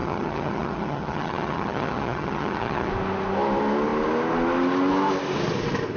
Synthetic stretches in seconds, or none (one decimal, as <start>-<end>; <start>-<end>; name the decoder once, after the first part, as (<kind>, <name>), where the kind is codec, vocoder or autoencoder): 0.0-2.9 (vocoder, HiFi-GAN)